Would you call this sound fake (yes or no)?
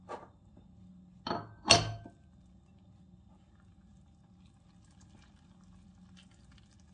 no